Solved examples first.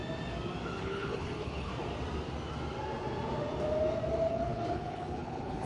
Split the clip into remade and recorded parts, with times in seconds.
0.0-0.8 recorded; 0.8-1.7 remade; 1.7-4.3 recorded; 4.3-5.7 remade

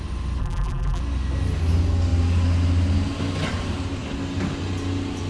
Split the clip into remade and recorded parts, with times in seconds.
0.0-0.4 recorded; 0.4-1.0 remade; 1.0-5.3 recorded

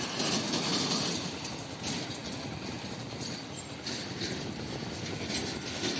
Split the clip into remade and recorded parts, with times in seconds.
0.0-2.2 recorded; 2.2-5.0 remade; 5.0-6.0 recorded